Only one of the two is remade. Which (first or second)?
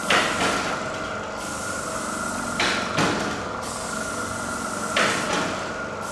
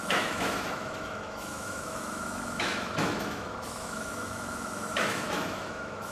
second